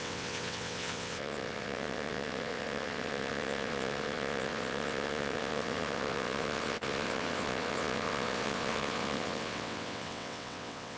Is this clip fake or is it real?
fake